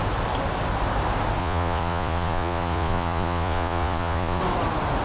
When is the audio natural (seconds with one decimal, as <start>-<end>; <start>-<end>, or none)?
0.0-1.4; 4.4-5.0